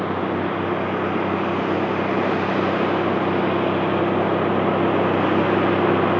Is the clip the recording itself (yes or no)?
yes